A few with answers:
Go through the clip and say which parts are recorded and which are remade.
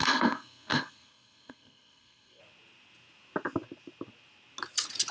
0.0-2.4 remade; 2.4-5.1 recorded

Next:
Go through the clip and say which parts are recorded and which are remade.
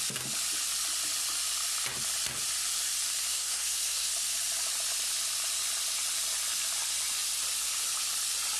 0.0-3.3 recorded; 3.3-4.1 remade; 4.1-8.6 recorded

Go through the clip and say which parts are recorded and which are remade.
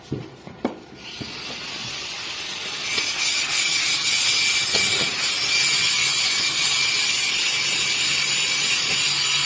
0.0-1.8 recorded; 1.8-2.3 remade; 2.3-5.8 recorded; 5.8-6.7 remade; 6.7-9.5 recorded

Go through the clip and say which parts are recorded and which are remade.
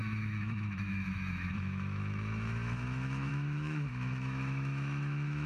0.0-5.5 remade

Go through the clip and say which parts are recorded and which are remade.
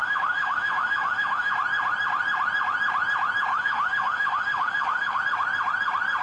0.0-1.5 remade; 1.5-3.5 recorded; 3.5-5.2 remade; 5.2-6.2 recorded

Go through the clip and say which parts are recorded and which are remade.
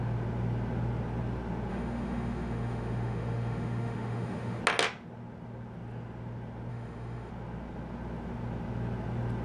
0.0-1.7 recorded; 1.7-4.6 remade; 4.6-6.7 recorded; 6.7-7.3 remade; 7.3-9.4 recorded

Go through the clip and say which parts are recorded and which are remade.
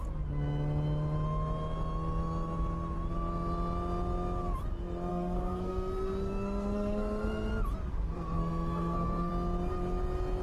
0.0-5.1 recorded; 5.1-7.5 remade; 7.5-7.9 recorded; 7.9-9.3 remade; 9.3-10.4 recorded